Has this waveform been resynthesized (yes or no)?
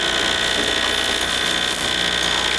no